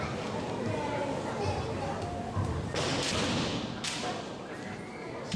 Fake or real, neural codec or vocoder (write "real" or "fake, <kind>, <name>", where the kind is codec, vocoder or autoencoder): real